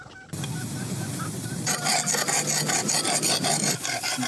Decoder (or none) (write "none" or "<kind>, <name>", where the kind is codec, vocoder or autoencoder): none